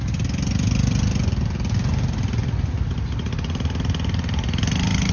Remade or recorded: recorded